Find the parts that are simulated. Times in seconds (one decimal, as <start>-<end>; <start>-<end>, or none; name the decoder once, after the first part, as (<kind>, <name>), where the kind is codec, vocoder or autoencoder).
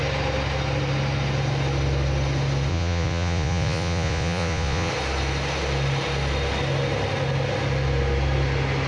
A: 2.7-4.9 (vocoder, Vocos)